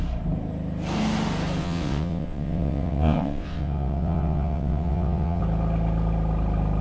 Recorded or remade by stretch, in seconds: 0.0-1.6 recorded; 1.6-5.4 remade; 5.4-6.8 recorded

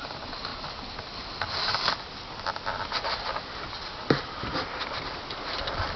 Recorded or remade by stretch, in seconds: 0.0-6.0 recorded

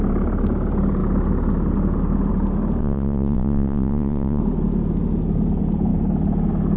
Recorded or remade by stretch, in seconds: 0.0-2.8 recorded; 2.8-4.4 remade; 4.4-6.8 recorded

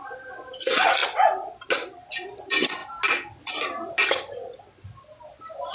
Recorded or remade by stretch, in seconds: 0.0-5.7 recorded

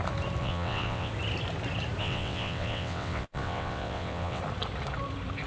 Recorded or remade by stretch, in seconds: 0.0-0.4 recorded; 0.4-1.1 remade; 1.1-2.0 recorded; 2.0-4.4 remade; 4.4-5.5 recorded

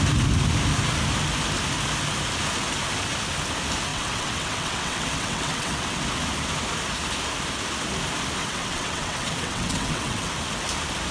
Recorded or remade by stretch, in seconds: 0.0-3.9 recorded; 3.9-6.0 remade; 6.0-8.4 recorded; 8.4-10.3 remade; 10.3-11.1 recorded